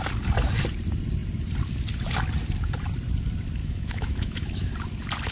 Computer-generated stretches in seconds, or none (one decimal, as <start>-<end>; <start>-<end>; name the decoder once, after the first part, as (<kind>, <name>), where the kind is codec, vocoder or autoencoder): 3.6-4.7 (autoencoder, DAC-VAE)